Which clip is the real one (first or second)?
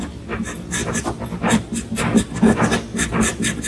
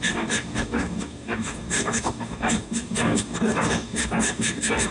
first